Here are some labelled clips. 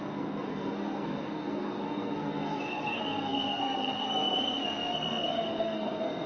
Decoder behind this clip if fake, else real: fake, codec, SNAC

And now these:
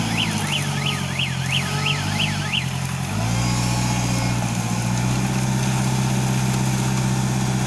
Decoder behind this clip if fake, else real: real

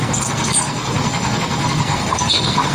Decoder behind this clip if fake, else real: fake, codec, SNAC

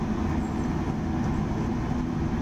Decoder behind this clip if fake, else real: real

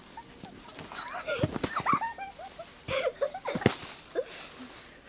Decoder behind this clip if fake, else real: real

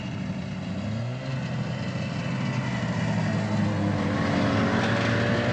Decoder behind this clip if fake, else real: real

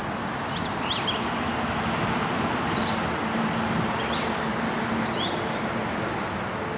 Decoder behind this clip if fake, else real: real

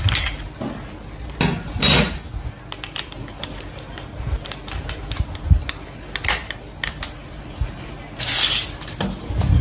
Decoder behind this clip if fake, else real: real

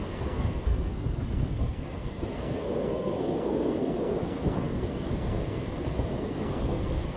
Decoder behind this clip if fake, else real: fake, codec, SNAC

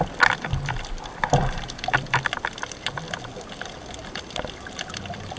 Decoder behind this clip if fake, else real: real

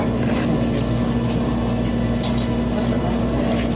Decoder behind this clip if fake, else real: real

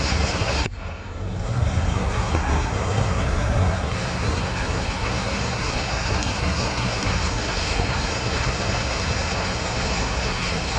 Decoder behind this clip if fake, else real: fake, codec, SNAC